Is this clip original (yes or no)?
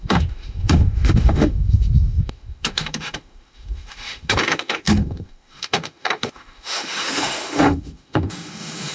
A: no